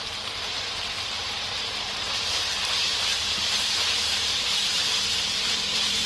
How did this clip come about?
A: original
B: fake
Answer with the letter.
B